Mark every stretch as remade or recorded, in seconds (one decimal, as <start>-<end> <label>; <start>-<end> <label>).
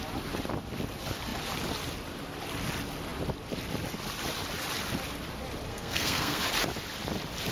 0.0-5.7 recorded; 5.7-6.4 remade; 6.4-7.5 recorded